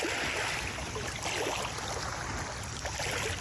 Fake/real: real